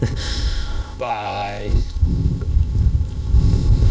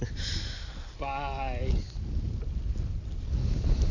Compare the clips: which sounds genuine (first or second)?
second